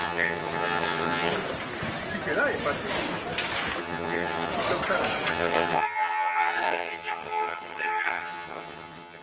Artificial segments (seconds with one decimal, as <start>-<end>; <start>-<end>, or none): 0.0-1.3; 3.8-4.5; 5.3-9.2

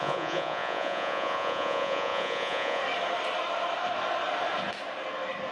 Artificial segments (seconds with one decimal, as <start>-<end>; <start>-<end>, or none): 0.0-2.8

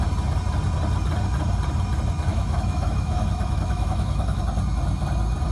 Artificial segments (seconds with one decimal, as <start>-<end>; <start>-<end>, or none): 2.3-4.4

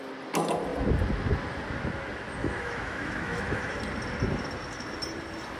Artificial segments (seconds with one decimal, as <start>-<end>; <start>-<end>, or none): 2.4-3.8

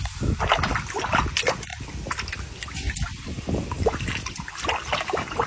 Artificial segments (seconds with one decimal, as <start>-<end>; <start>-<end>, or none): none